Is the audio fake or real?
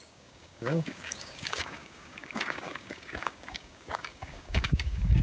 fake